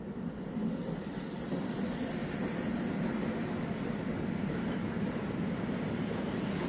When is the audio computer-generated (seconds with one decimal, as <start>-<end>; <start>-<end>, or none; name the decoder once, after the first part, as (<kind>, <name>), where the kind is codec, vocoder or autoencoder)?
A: 0.0-2.2 (vocoder, BigVGAN v2); 4.7-6.7